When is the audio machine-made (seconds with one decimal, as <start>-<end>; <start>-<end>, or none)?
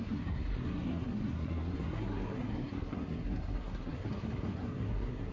0.0-5.3